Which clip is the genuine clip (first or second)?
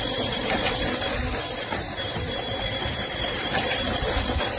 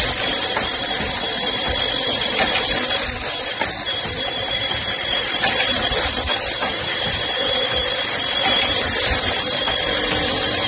first